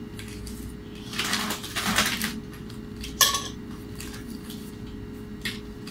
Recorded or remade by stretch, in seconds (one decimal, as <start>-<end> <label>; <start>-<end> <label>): 0.0-5.9 recorded